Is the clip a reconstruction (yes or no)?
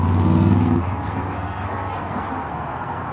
yes